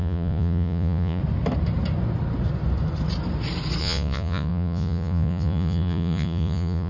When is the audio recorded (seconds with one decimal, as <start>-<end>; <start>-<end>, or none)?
1.2-3.8